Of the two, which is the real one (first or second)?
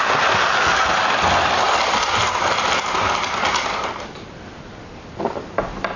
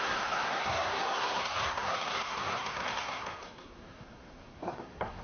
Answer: first